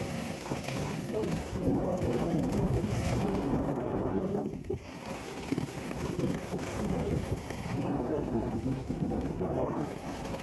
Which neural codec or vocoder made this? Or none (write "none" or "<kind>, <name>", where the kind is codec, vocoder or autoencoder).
codec, SNAC